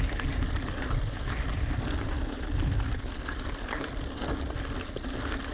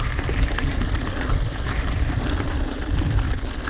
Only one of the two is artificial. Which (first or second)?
second